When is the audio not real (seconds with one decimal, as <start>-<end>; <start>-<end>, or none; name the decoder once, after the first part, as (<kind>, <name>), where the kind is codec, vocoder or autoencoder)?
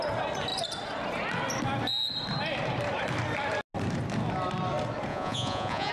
5.1-5.9 (vocoder, Vocos)